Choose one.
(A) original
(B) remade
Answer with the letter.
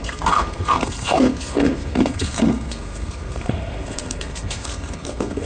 B